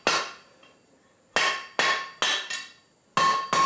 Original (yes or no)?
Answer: yes